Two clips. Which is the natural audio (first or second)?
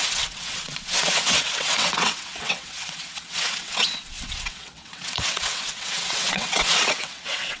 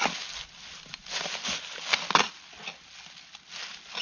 second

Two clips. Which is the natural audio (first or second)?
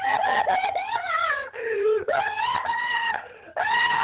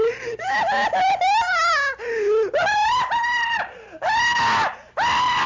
second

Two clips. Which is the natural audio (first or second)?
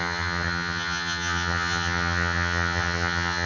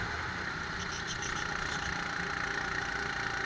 second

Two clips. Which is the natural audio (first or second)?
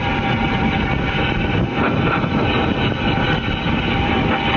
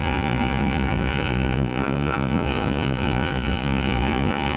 first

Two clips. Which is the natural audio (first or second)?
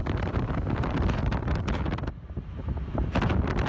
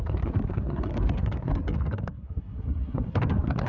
first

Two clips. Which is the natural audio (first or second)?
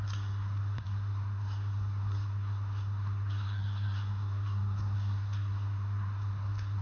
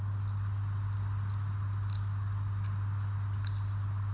second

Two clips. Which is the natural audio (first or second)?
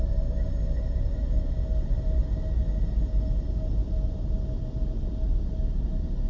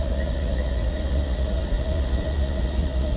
first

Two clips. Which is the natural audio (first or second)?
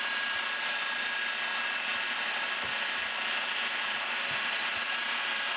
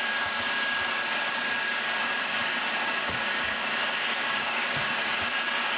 first